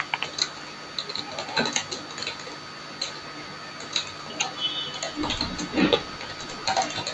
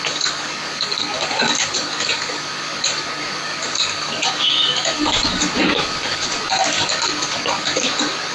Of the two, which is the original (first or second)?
first